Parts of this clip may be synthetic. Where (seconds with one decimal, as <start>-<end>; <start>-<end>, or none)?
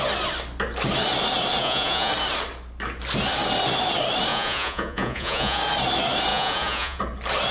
1.6-2.1; 4.3-5.6; 6.3-7.0